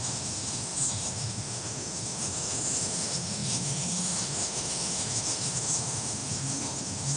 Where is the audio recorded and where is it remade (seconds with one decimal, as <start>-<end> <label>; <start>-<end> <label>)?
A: 0.0-7.2 remade